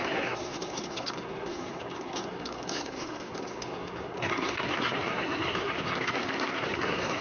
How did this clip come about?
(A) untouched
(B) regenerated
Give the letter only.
B